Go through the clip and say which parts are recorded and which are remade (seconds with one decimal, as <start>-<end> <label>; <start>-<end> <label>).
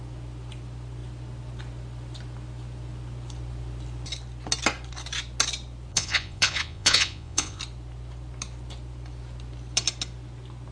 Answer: 0.0-5.9 recorded; 5.9-7.6 remade; 7.6-10.7 recorded